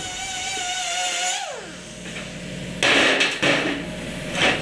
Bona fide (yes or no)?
yes